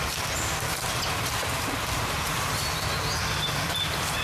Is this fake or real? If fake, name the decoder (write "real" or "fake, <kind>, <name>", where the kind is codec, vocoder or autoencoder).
fake, vocoder, BigVGAN v2